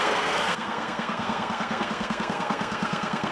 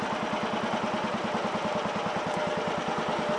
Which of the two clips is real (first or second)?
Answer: second